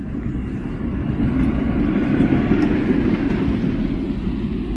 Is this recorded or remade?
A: recorded